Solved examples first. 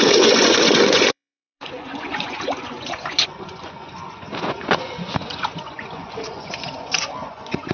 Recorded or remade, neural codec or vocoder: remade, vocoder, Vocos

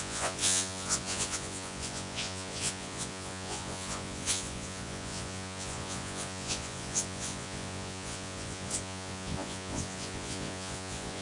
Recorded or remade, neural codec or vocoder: remade, vocoder, Vocos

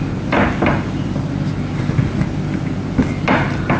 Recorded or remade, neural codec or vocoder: recorded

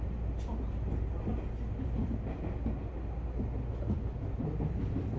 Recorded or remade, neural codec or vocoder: recorded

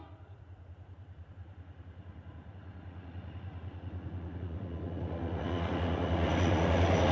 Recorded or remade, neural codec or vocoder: remade, vocoder, Vocos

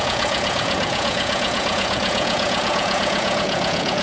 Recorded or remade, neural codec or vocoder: remade, vocoder, Vocos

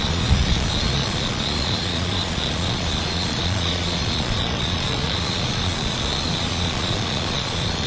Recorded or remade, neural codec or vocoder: remade, vocoder, Vocos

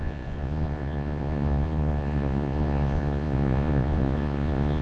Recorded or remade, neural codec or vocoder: remade, vocoder, Vocos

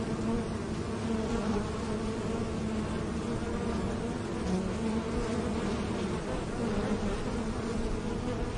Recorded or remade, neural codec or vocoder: recorded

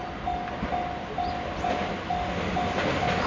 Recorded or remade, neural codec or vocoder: recorded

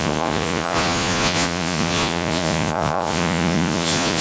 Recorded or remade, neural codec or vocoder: remade, vocoder, Vocos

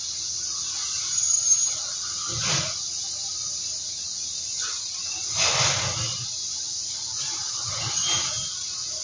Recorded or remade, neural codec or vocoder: recorded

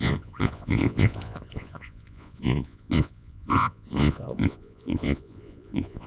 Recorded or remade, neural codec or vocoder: remade, vocoder, Vocos